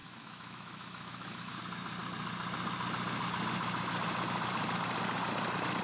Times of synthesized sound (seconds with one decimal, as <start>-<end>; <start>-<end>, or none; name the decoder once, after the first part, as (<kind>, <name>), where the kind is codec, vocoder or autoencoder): 0.0-1.6 (autoencoder, DAC-VAE)